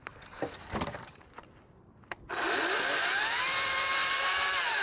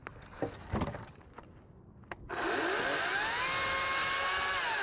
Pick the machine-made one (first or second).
first